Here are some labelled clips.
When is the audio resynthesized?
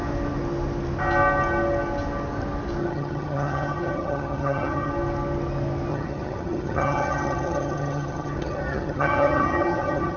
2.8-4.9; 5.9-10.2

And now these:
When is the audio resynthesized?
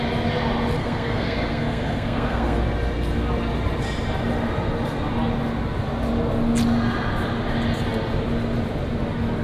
0.8-2.6